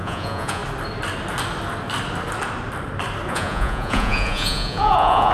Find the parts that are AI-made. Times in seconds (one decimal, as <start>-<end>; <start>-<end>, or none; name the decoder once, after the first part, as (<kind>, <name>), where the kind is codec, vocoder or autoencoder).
0.0-0.6 (vocoder, Vocos); 3.3-5.3